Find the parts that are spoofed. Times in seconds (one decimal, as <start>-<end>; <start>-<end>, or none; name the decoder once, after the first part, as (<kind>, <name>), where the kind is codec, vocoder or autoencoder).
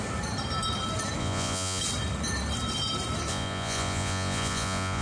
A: 1.2-1.8 (vocoder, Vocos); 3.3-5.0